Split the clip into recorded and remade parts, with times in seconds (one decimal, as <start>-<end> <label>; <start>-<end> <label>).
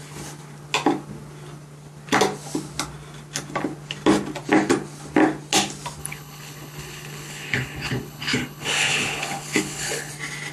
0.0-6.0 recorded; 6.0-10.1 remade; 10.1-10.5 recorded